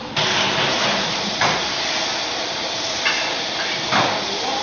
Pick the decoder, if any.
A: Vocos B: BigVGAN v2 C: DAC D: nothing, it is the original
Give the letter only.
D